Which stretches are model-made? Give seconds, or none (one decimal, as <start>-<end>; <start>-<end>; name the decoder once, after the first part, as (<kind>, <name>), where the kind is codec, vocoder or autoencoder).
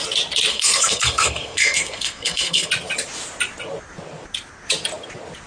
0.5-2.7 (codec, SNAC)